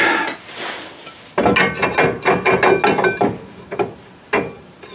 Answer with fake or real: real